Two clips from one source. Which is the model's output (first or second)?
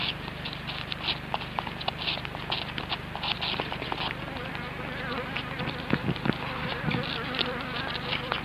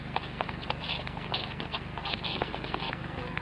second